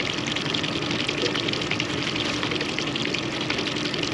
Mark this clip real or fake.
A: real